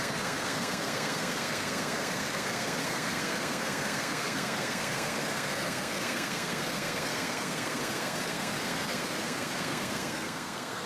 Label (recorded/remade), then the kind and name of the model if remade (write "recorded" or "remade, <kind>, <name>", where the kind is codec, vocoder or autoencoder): remade, codec, SNAC